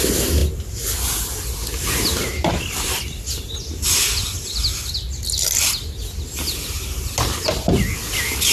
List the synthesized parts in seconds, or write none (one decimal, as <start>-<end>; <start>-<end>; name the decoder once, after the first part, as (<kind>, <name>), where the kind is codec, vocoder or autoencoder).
none